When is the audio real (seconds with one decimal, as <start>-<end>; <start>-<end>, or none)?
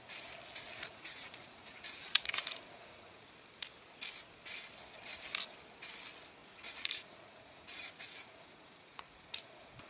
0.0-0.8; 3.3-6.4